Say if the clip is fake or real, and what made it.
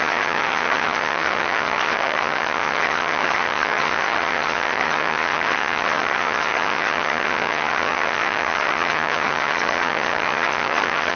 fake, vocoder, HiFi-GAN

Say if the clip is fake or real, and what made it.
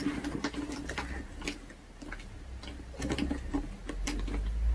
real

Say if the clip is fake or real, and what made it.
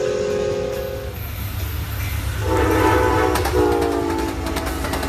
real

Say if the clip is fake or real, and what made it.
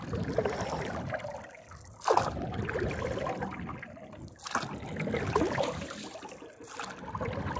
real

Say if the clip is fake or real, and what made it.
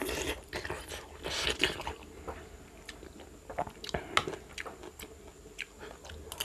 real